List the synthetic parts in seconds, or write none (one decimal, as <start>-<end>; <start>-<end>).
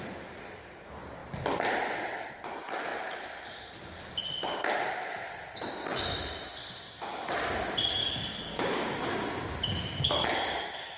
6.6-7.3; 8.0-9.0